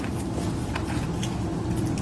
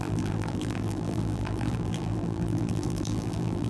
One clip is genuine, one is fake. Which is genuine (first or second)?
first